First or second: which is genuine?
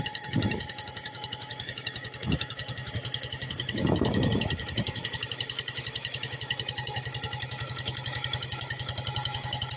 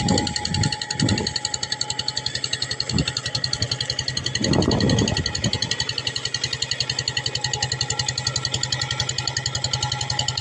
second